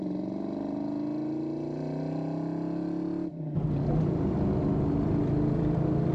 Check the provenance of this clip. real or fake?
real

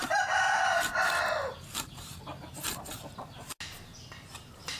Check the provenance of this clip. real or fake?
real